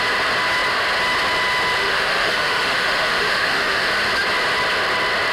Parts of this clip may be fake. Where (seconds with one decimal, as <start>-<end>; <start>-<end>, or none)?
1.8-3.9